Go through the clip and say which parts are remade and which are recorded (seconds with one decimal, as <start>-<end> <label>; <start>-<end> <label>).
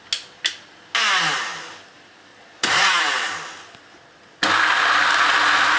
0.0-2.3 recorded; 2.3-3.0 remade; 3.0-5.8 recorded